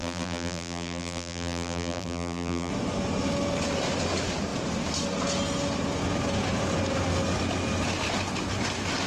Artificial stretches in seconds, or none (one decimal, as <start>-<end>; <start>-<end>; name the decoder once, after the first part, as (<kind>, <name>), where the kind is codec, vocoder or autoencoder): 0.0-2.7 (vocoder, BigVGAN v2)